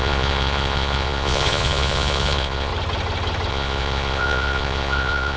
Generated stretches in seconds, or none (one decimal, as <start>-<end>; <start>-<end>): 0.0-2.7; 3.5-5.4